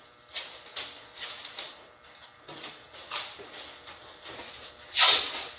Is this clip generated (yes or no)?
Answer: no